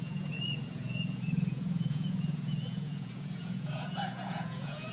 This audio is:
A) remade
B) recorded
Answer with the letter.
A